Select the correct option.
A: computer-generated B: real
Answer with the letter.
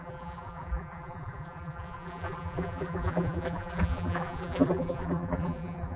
A